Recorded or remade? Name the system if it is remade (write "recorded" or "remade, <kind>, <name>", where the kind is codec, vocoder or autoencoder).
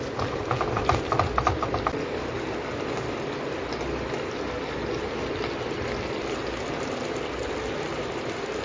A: recorded